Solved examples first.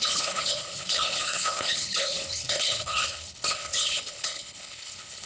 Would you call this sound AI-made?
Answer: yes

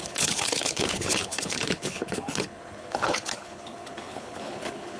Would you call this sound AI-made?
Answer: yes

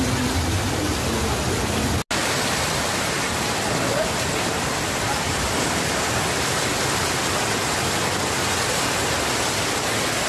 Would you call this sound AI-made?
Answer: no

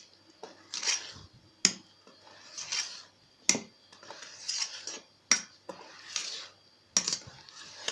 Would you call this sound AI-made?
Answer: no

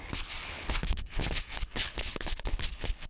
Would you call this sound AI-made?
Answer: yes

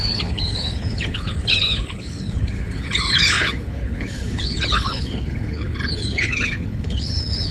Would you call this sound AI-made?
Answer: yes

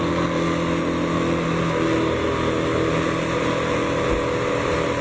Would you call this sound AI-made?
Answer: no